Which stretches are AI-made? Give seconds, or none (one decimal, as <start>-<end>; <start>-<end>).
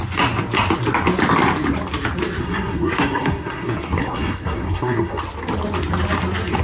2.4-5.2